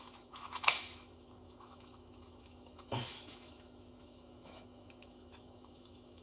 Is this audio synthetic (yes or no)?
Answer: yes